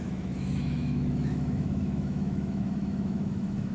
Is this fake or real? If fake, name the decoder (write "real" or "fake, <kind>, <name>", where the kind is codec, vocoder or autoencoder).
fake, autoencoder, DAC-VAE